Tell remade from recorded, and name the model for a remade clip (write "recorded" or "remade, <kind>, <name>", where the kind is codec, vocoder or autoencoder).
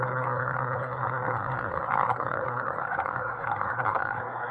remade, codec, SNAC